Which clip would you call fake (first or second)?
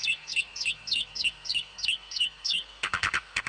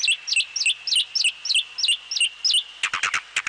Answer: first